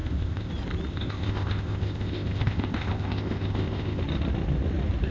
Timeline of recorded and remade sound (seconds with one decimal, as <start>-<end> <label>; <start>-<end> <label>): 0.0-0.5 remade; 0.5-0.9 recorded; 0.9-4.0 remade; 4.0-5.1 recorded